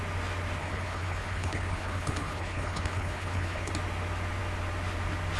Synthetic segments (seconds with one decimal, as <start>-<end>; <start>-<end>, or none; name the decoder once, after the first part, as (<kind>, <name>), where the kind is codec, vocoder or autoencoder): 0.6-3.7 (codec, HILCodec)